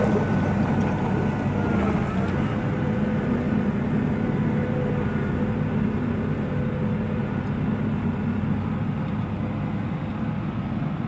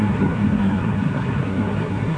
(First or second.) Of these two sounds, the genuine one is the first